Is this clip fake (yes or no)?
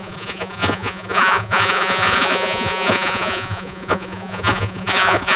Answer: yes